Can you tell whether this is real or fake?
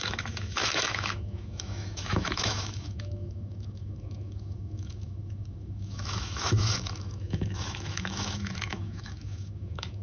fake